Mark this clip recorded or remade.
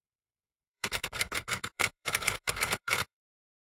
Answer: remade